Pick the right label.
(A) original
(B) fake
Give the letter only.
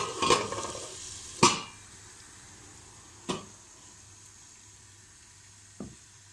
A